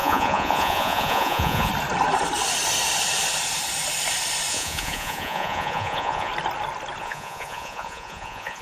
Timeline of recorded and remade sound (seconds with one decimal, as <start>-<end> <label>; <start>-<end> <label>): 0.0-1.7 remade; 1.7-4.5 recorded; 4.5-6.3 remade; 6.3-7.0 recorded; 7.0-8.6 remade